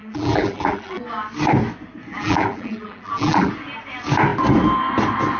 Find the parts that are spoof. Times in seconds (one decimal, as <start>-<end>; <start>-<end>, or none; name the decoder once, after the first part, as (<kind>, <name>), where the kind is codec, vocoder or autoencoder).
0.0-1.0 (vocoder, BigVGAN v2); 2.1-3.5